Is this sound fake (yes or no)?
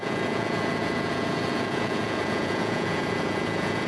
yes